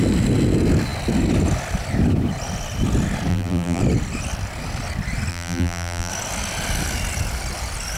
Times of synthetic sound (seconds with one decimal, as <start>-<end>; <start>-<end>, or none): 3.3-3.8; 5.3-6.1